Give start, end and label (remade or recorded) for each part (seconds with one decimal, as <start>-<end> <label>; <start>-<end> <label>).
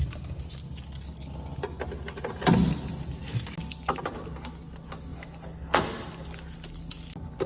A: 0.0-7.5 recorded